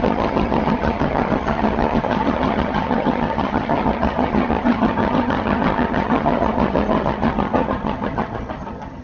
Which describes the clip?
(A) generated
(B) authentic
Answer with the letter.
A